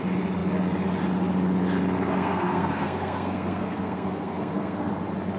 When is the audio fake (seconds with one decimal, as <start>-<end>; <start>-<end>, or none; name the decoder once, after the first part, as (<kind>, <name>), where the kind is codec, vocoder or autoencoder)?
2.1-4.9 (codec, SNAC)